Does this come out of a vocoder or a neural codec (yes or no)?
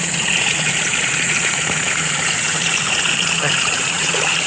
yes